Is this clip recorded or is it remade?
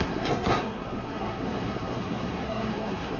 remade